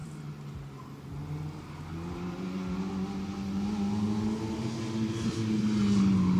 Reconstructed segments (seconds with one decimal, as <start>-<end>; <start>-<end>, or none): none